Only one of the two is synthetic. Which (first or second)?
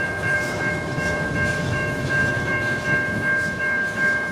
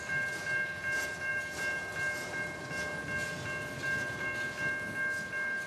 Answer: first